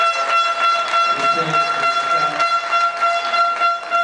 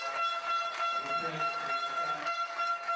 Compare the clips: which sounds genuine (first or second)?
first